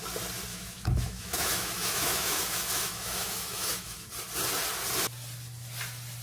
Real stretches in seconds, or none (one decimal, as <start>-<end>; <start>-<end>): 0.0-0.5; 4.1-6.2